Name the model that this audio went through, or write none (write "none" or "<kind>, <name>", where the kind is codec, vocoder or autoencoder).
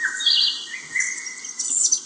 none